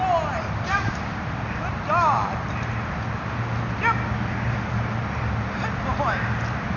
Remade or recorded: recorded